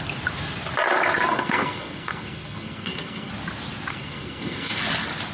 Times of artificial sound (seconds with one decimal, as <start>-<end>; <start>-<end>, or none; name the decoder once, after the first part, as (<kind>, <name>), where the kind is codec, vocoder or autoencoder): 1.3-3.3 (codec, SNAC); 3.9-4.8